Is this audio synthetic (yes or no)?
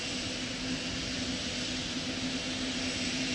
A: no